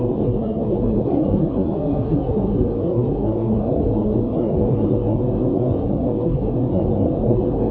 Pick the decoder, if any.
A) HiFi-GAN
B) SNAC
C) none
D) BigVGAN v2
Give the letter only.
B